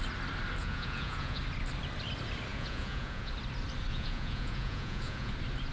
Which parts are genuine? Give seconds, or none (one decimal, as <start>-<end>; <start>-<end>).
0.0-0.6; 1.4-2.5; 3.3-3.9; 5.3-5.7